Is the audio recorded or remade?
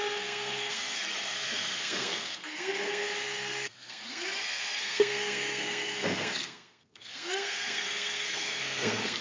remade